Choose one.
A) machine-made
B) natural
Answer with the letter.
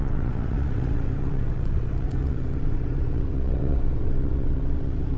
A